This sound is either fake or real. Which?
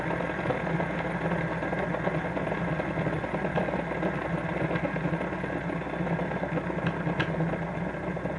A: real